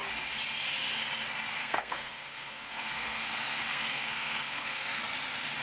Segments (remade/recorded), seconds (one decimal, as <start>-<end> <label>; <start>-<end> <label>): 0.0-1.6 recorded; 1.6-5.0 remade; 5.0-5.6 recorded